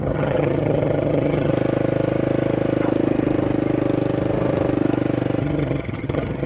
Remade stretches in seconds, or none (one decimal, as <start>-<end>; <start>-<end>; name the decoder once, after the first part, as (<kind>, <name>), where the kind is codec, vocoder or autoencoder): 0.0-1.5 (vocoder, HiFi-GAN); 5.4-6.5